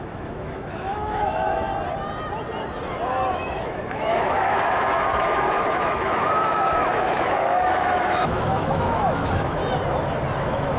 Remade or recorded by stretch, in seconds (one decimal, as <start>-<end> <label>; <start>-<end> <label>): 0.0-1.7 remade; 1.7-3.3 recorded; 3.3-9.6 remade; 9.6-10.4 recorded; 10.4-10.8 remade